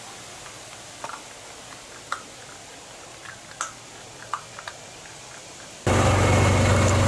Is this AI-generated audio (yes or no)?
no